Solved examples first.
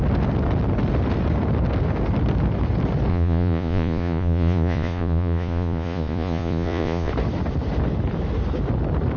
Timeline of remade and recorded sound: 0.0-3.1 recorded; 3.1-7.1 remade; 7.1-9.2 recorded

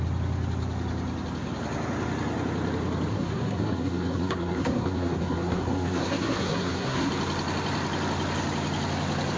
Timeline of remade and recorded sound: 0.0-3.1 recorded; 3.1-7.1 remade; 7.1-9.4 recorded